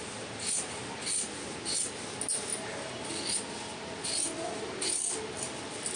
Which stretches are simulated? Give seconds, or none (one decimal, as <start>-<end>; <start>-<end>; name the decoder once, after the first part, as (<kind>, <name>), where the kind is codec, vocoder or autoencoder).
none